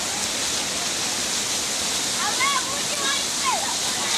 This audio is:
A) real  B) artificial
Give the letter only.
A